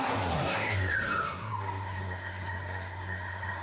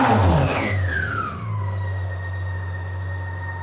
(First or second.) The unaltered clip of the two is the second